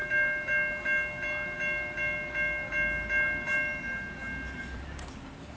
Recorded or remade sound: recorded